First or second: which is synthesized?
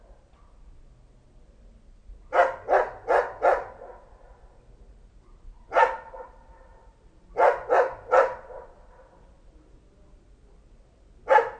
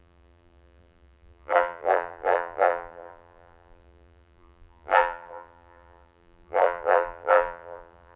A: second